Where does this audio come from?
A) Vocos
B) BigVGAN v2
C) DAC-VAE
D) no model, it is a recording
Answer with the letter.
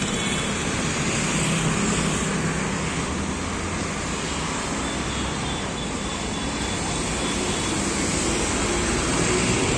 D